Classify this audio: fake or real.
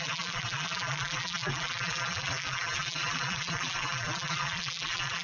fake